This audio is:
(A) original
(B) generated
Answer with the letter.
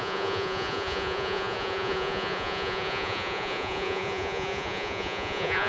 B